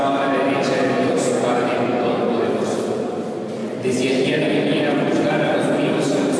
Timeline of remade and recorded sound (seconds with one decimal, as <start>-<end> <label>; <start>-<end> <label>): 0.0-3.6 recorded; 3.6-4.4 remade; 4.4-6.4 recorded